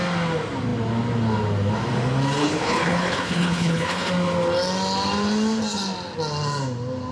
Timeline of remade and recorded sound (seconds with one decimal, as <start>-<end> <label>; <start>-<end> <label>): 0.0-2.4 recorded; 2.4-4.1 remade; 4.1-7.1 recorded